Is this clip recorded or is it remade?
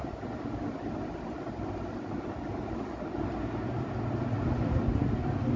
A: recorded